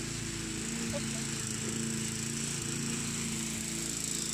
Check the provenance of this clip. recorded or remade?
recorded